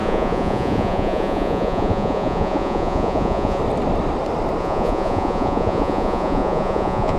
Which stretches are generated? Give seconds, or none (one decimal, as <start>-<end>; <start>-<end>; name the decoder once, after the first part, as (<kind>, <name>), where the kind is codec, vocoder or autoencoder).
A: 0.0-3.6 (vocoder, Vocos); 4.6-7.2